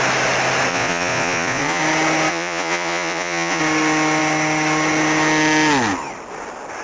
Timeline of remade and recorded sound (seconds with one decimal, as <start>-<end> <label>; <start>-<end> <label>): 0.0-0.7 recorded; 0.7-1.8 remade; 1.8-2.3 recorded; 2.3-3.6 remade; 3.6-6.8 recorded